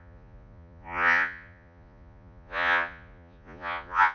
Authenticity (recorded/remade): remade